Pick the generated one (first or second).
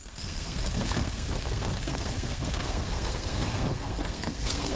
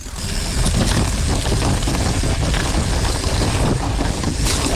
first